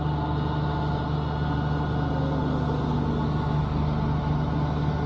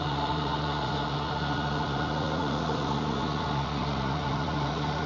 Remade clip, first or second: second